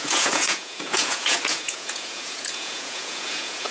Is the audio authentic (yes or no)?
no